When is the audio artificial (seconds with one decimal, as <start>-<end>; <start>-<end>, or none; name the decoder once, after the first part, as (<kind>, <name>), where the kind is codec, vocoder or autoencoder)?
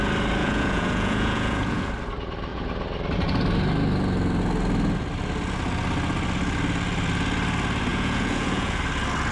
0.4-1.9 (vocoder, Vocos); 7.9-8.8